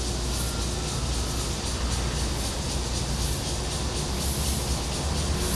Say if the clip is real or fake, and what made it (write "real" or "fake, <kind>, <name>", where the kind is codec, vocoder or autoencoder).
real